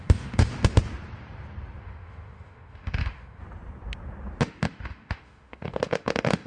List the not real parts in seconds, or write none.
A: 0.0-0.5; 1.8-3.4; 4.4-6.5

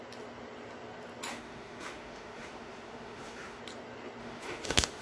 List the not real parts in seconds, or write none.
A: 1.3-3.6; 4.2-5.0

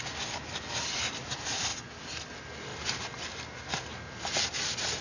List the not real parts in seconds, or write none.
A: none

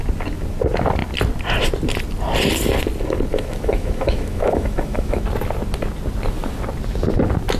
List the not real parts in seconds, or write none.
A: 3.3-5.2

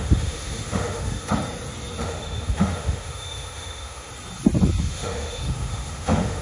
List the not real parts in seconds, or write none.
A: 0.0-1.3; 2.0-4.1; 4.8-6.4

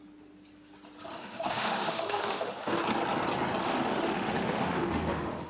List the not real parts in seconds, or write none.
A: 1.1-2.8; 3.6-5.5